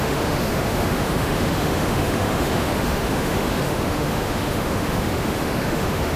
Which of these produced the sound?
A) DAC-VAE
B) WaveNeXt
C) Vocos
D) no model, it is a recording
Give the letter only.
A